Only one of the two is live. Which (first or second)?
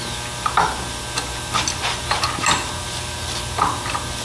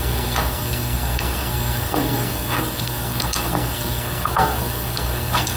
first